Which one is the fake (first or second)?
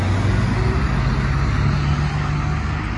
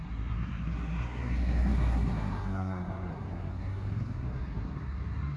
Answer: second